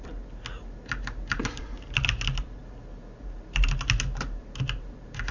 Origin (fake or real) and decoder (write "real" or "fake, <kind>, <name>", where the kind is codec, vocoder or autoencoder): real